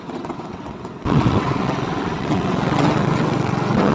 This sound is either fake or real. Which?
fake